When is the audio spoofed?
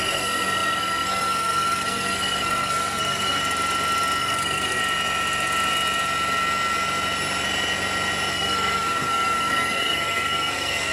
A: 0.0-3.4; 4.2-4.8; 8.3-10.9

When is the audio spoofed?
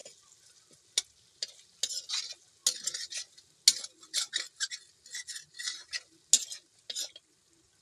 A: none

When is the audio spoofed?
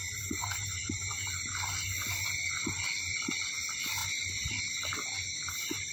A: none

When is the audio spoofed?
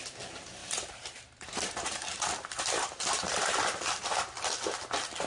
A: 0.6-3.8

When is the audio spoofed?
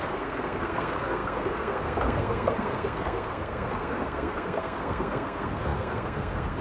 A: 0.0-6.6